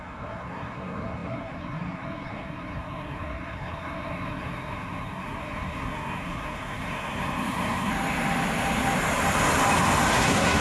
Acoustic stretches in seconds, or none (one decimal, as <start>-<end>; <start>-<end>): 7.9-10.1